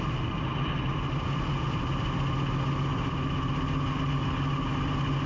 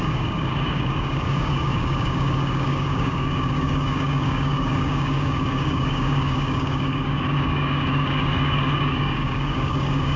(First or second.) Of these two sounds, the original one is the first